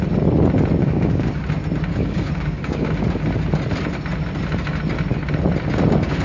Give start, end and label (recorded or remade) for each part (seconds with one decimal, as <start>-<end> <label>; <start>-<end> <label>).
0.0-0.8 recorded; 0.8-1.4 remade; 1.4-1.9 recorded; 1.9-2.9 remade; 2.9-6.2 recorded